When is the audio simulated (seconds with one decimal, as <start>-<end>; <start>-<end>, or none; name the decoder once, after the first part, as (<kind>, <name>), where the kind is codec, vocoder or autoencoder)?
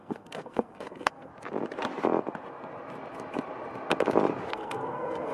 0.0-1.3 (codec, SNAC); 4.5-5.3